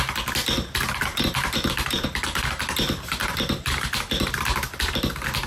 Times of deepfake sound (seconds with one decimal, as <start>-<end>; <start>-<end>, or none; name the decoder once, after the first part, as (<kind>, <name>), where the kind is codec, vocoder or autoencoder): 1.1-4.4 (vocoder, BigVGAN v2)